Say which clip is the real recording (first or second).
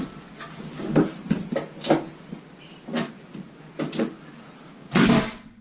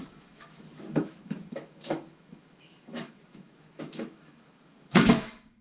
first